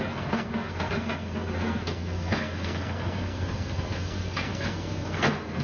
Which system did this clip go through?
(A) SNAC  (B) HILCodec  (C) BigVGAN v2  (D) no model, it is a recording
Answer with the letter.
A